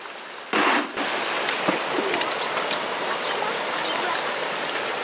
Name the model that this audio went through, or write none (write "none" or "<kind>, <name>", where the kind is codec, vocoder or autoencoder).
none